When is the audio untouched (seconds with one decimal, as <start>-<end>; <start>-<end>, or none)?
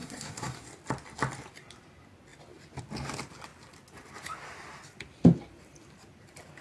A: 0.7-6.6